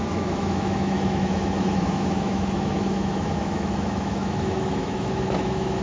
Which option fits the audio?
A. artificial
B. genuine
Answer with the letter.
A